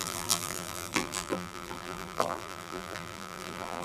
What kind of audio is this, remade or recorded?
remade